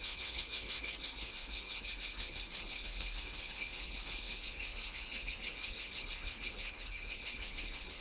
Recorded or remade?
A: remade